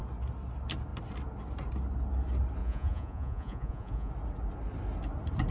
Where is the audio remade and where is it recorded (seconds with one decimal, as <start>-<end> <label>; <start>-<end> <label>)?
0.0-2.6 recorded; 2.6-4.1 remade; 4.1-5.5 recorded